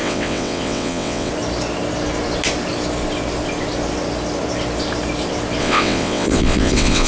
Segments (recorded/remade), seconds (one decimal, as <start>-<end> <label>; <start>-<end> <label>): 0.0-1.3 remade; 1.3-5.6 recorded; 5.6-7.1 remade